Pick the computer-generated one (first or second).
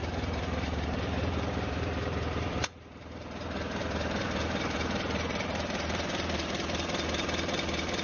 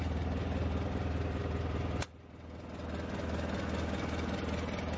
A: first